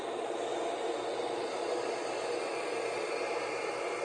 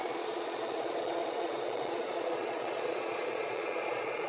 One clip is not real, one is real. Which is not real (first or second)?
second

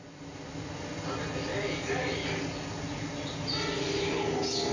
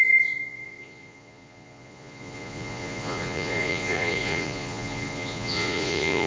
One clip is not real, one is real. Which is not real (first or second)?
second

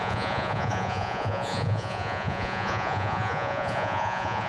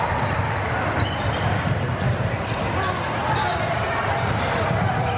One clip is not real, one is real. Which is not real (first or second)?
first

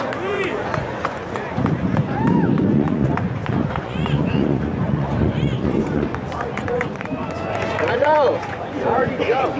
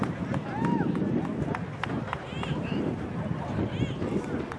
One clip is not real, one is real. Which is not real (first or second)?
first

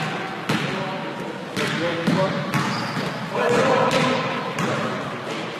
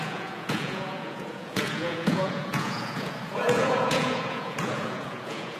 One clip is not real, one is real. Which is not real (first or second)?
second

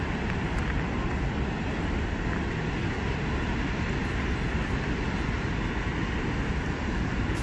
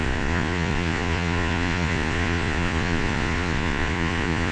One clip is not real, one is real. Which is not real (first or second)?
second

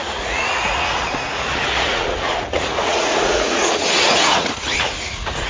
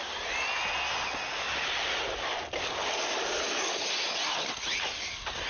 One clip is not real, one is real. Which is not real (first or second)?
first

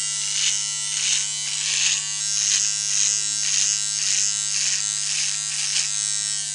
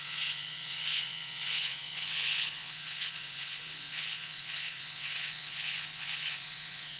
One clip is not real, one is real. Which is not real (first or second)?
second